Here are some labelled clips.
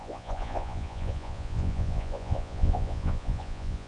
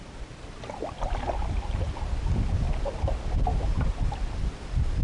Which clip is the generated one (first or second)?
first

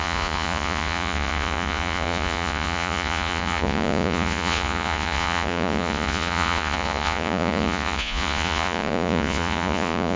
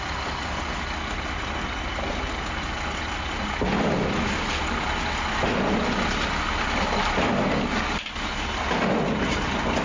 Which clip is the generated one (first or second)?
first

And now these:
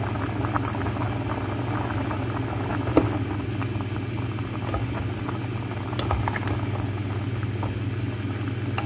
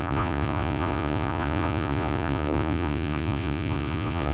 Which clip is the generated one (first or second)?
second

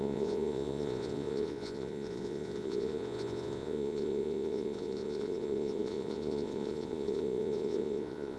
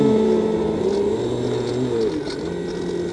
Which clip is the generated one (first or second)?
first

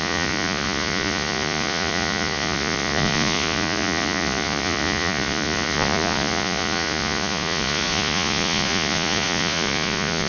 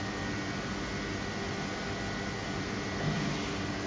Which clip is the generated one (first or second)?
first